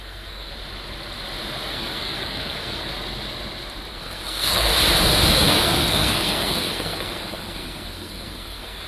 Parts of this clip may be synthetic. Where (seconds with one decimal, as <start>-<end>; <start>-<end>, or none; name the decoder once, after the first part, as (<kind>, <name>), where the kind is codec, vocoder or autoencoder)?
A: 0.0-0.5 (codec, SNAC); 1.7-2.9; 3.9-4.7; 5.3-8.9